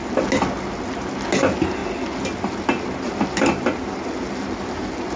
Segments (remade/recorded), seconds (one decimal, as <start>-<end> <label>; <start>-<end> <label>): 0.0-5.2 recorded

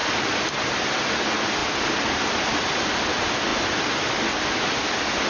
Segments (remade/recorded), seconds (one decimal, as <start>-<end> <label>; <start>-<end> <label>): 0.0-5.3 recorded